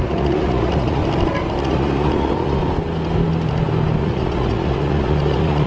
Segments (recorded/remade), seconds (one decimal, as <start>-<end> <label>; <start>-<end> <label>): 0.0-1.0 remade; 1.0-1.6 recorded; 1.6-2.6 remade; 2.6-4.0 recorded; 4.0-5.7 remade